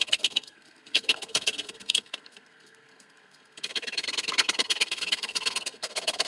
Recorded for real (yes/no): no